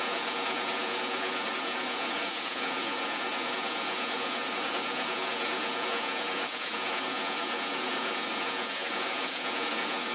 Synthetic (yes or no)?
yes